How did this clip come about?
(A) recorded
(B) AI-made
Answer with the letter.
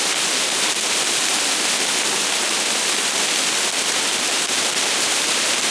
A